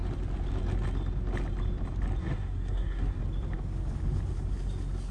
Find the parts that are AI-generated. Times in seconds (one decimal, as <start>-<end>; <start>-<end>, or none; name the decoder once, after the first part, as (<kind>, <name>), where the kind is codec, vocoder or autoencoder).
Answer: 2.2-3.2 (codec, SNAC)